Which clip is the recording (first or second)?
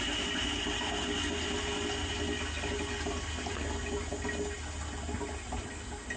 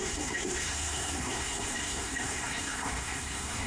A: first